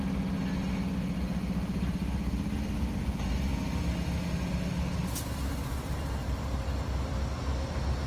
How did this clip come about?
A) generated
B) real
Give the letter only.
B